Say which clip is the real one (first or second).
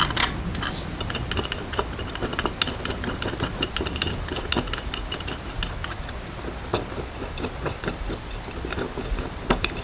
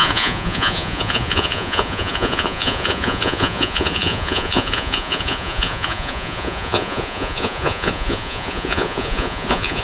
first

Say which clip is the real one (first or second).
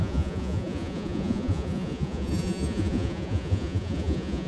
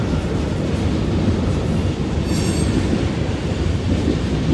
second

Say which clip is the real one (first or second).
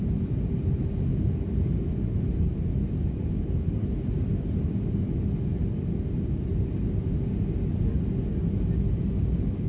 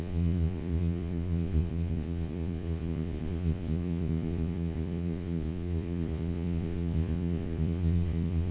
first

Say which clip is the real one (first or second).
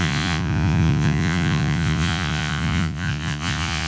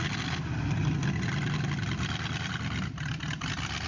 second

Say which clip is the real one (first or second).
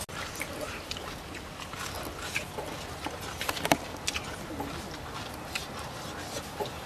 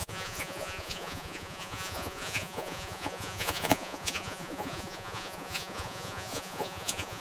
first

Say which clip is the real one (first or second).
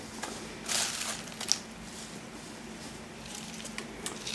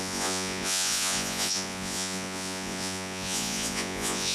first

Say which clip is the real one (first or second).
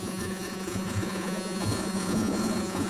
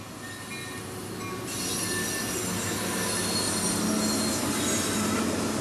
second